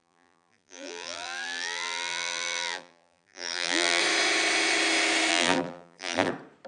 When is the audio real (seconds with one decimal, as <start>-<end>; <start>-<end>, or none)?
4.0-5.3; 6.3-6.7